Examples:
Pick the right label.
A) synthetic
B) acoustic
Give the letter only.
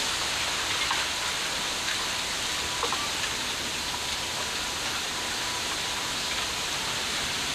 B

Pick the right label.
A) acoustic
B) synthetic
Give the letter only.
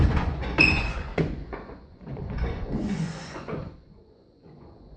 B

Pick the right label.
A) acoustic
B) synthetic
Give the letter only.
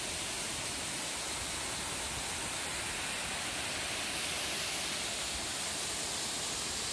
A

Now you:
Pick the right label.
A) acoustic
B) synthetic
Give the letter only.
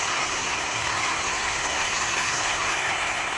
B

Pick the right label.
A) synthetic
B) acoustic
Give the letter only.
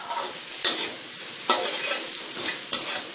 B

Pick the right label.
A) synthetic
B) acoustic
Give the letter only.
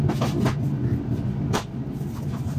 B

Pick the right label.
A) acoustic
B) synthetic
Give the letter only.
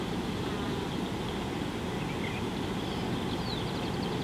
A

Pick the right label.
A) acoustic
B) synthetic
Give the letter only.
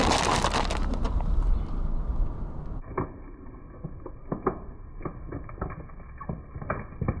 A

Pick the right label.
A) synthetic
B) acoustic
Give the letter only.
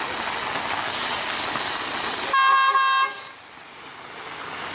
B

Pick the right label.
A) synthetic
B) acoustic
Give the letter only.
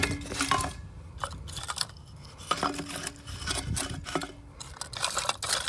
B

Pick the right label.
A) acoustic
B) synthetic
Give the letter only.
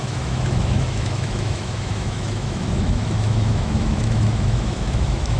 B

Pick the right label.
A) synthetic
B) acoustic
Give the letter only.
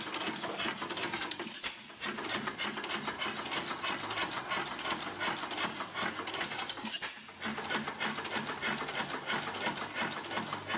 B